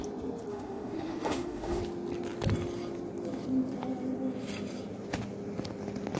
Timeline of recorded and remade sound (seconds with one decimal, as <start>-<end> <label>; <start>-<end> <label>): 0.0-0.5 recorded; 0.5-1.8 remade; 1.8-6.2 recorded